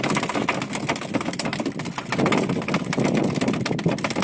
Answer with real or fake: real